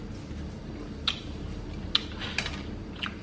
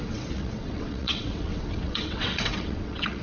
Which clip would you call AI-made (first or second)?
second